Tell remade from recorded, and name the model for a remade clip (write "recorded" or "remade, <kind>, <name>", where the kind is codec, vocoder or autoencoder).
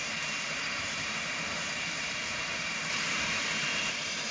remade, vocoder, BigVGAN v2